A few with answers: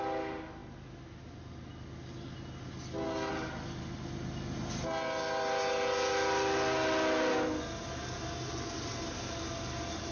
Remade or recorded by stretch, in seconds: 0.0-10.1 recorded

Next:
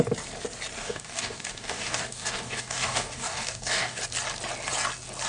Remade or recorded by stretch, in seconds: 0.0-0.8 recorded; 0.8-4.0 remade; 4.0-5.3 recorded